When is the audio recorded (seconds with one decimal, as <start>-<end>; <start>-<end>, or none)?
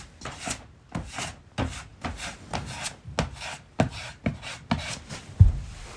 0.0-6.0